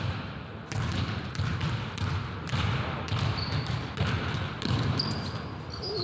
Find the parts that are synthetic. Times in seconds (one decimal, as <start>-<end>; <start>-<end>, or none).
0.0-6.0